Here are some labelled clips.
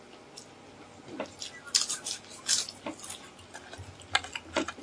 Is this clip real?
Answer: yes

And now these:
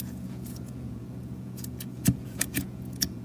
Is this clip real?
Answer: no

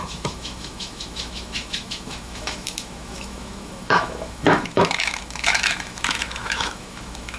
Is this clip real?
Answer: no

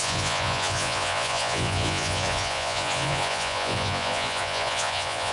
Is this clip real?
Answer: no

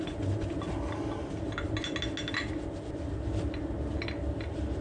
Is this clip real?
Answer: yes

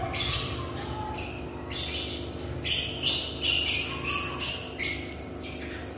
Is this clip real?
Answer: yes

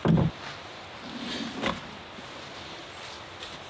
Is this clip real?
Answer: yes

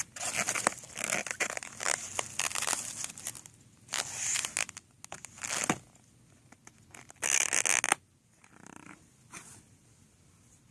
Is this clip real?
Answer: yes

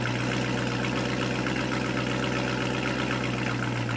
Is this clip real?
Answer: yes